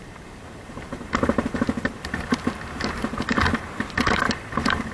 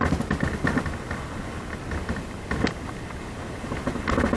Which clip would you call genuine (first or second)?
second